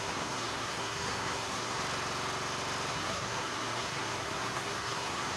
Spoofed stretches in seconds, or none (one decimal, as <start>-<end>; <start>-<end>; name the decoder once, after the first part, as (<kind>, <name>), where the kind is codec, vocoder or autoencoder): 0.0-1.8 (codec, SNAC); 2.9-5.4

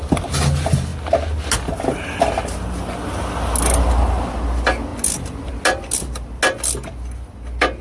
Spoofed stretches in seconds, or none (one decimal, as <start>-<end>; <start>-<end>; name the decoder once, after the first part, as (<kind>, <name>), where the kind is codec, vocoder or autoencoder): none